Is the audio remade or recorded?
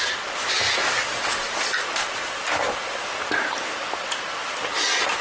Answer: recorded